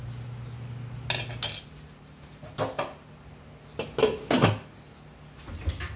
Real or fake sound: real